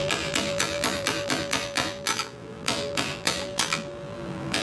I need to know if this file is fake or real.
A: fake